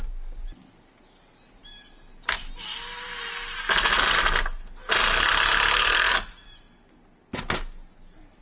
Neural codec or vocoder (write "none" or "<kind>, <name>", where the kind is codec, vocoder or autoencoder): none